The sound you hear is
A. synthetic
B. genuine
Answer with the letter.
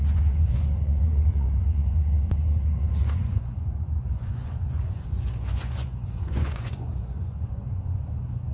A